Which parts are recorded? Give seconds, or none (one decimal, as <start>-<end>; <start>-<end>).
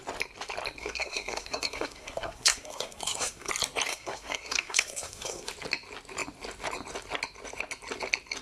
0.0-0.8; 3.5-3.9; 5.5-8.4